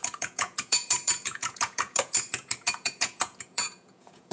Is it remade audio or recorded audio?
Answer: remade